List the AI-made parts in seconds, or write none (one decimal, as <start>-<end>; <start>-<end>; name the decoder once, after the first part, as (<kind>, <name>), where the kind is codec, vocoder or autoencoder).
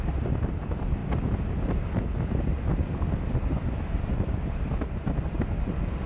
none